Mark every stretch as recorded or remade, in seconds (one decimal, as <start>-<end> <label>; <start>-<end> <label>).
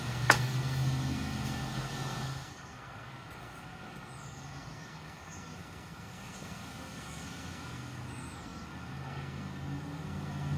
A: 0.0-10.6 remade